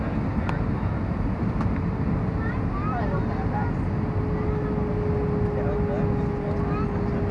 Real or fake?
real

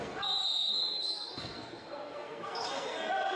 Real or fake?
fake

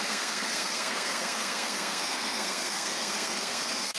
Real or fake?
fake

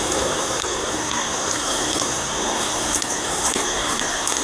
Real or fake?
fake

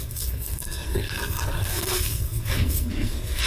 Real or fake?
fake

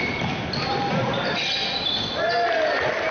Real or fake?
real